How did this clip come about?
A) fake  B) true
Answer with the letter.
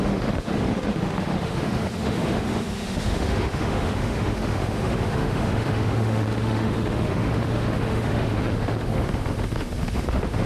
A